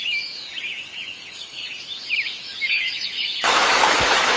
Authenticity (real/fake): fake